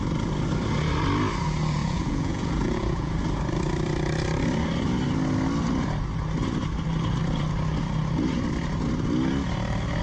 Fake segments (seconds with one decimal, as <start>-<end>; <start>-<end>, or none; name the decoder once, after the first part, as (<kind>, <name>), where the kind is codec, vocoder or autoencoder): 1.8-3.1 (vocoder, Vocos)